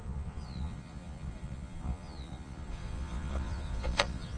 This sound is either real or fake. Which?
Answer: fake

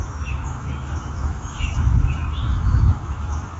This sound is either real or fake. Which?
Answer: fake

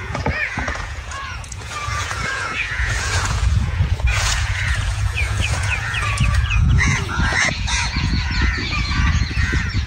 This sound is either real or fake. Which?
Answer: fake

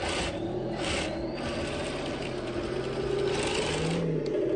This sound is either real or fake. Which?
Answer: real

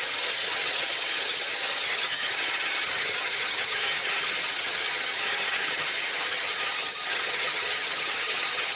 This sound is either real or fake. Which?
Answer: fake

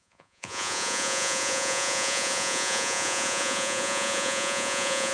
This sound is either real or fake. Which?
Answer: fake